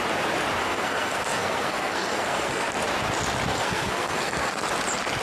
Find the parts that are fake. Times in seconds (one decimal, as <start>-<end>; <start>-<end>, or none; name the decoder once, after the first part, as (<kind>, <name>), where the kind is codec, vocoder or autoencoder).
0.6-2.7 (codec, SNAC); 3.5-4.6